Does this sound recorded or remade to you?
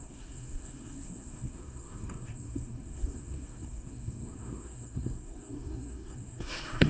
remade